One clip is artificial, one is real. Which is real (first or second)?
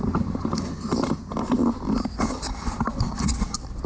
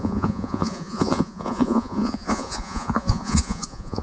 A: first